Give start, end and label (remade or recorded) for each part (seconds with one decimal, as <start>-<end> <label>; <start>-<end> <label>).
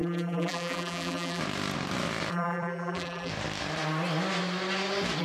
0.0-1.4 remade; 1.4-2.3 recorded; 2.3-3.3 remade; 3.3-5.2 recorded